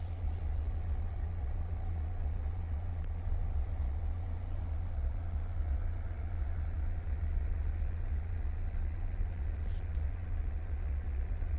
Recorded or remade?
remade